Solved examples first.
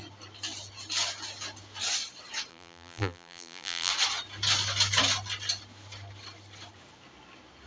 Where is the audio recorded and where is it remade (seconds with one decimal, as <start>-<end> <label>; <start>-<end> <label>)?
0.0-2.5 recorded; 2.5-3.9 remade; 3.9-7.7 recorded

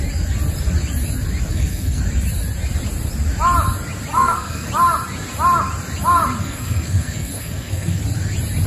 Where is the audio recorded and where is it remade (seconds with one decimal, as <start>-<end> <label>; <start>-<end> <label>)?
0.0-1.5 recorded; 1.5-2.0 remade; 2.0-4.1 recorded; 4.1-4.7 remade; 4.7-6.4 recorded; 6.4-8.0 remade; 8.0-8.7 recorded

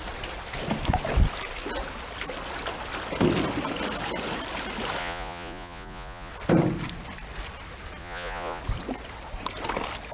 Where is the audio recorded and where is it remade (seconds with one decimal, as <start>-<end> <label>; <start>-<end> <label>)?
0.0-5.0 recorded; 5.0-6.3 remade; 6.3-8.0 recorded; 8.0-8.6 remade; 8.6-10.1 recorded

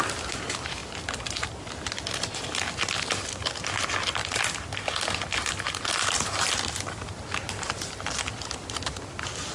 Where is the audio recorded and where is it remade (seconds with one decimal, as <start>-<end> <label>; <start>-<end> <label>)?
0.0-9.5 recorded